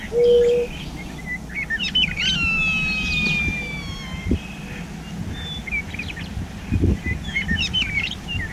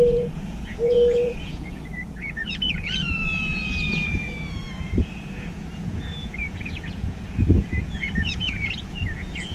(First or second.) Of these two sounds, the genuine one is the first